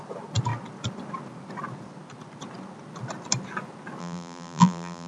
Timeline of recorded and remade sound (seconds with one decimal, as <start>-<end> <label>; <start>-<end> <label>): 0.0-4.0 recorded; 4.0-5.1 remade